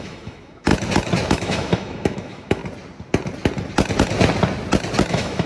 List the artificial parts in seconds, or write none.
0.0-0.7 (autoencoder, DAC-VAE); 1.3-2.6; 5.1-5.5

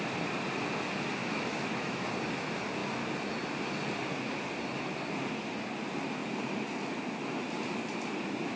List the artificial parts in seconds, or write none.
1.2-2.1 (autoencoder, DAC-VAE)

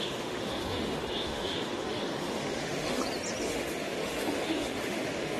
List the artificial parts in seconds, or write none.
0.0-3.0 (autoencoder, DAC-VAE); 3.5-5.4

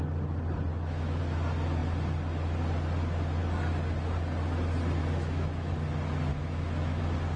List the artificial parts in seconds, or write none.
0.7-1.2 (autoencoder, DAC-VAE); 5.0-5.7; 6.3-7.0